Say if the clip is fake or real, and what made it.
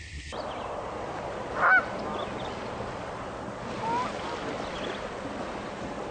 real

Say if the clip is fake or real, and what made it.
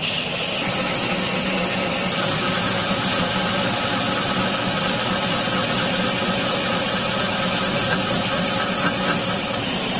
real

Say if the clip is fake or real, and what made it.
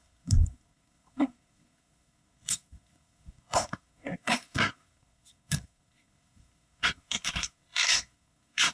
fake, codec, SNAC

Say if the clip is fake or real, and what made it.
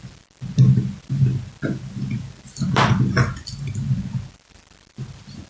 real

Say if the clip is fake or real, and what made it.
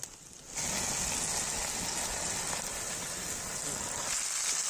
real